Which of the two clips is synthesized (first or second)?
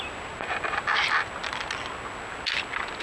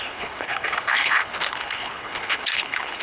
second